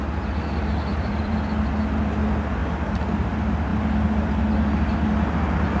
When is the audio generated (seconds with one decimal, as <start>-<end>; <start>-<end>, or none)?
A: 0.9-1.7; 3.7-4.4